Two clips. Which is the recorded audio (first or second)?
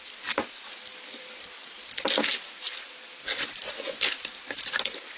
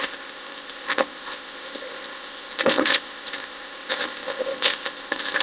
first